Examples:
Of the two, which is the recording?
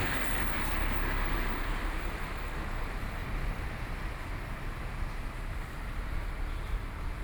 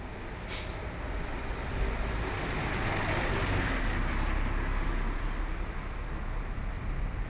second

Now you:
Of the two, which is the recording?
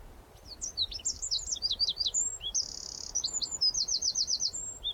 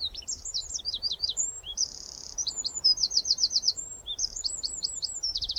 first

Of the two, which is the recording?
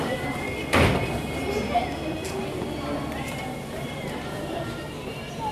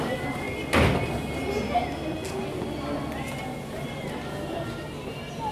second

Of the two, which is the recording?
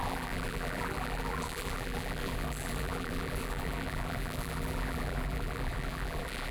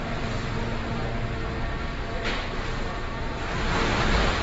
second